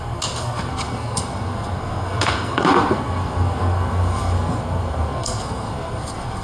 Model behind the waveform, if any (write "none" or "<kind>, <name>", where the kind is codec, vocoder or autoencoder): codec, SNAC